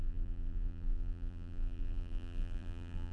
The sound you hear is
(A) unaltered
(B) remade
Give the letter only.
B